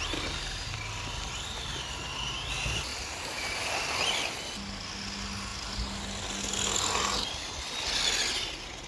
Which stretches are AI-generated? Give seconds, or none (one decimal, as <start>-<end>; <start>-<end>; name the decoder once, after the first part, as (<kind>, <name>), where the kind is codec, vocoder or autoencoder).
2.9-3.7 (vocoder, BigVGAN v2)